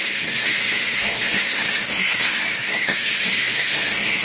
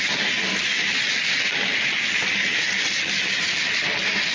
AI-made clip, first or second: first